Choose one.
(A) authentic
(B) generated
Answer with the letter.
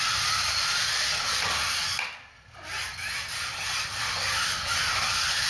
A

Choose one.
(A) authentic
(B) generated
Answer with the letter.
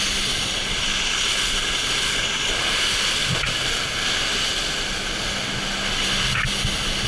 A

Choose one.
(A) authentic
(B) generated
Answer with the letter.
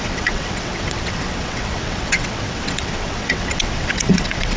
B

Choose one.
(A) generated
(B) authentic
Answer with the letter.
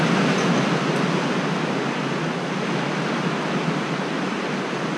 B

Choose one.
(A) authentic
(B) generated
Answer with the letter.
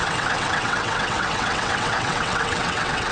B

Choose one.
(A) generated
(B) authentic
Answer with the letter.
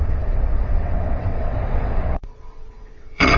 A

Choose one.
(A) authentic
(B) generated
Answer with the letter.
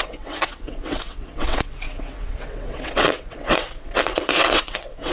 B